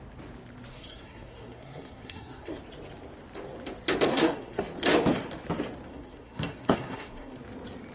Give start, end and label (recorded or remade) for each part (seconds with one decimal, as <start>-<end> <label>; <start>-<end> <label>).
0.0-0.7 recorded; 0.7-2.6 remade; 2.6-4.1 recorded; 4.1-4.6 remade; 4.6-5.9 recorded; 5.9-7.4 remade; 7.4-7.9 recorded